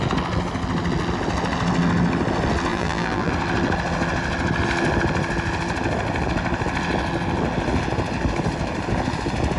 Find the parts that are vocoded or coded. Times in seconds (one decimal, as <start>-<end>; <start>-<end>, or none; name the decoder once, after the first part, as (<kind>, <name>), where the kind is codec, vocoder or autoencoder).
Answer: 2.7-3.3 (vocoder, BigVGAN v2)